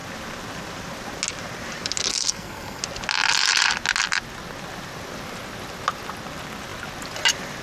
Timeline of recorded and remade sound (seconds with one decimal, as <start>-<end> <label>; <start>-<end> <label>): 0.0-2.1 recorded; 2.1-2.8 remade; 2.8-7.6 recorded

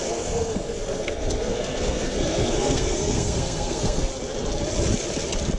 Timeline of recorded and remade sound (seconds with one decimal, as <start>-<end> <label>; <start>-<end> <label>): 0.0-4.1 remade; 4.1-5.6 recorded